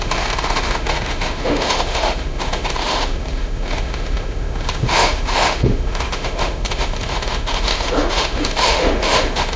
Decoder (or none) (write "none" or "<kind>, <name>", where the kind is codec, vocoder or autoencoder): autoencoder, DAC-VAE